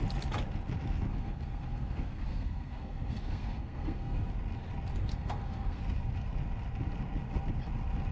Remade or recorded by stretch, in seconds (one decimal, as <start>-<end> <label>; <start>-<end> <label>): 0.0-1.1 recorded; 1.1-4.3 remade; 4.3-5.0 recorded; 5.0-5.8 remade; 5.8-8.1 recorded